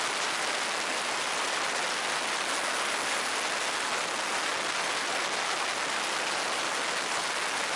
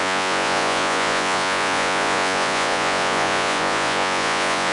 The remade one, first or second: second